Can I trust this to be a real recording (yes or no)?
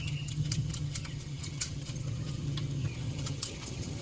no